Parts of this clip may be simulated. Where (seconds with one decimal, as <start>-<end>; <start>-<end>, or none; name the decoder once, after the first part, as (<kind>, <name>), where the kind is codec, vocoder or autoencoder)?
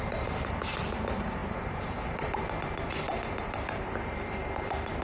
0.0-5.0 (vocoder, BigVGAN v2)